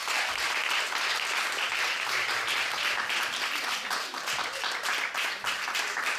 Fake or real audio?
real